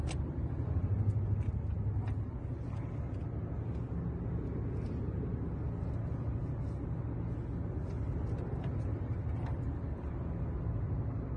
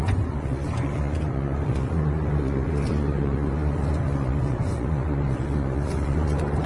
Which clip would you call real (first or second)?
first